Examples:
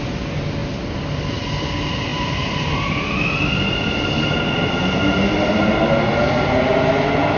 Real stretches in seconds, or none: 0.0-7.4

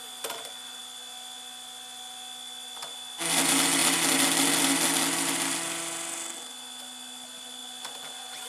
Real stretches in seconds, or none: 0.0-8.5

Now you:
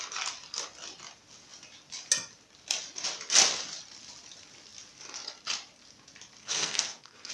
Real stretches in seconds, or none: 0.0-6.4